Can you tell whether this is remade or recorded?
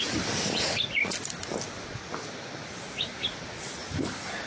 recorded